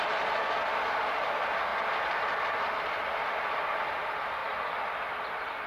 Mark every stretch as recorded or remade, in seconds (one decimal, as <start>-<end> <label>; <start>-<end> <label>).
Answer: 0.0-4.4 recorded; 4.4-4.9 remade; 4.9-5.7 recorded